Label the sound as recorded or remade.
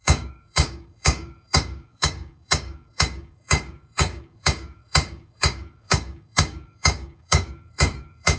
remade